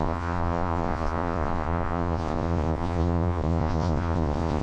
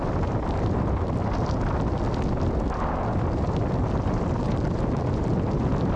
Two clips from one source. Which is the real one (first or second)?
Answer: second